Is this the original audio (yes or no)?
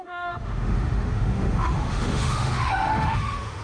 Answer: no